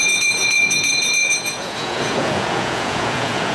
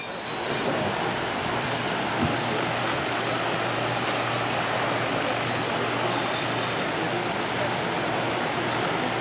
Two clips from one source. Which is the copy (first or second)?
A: first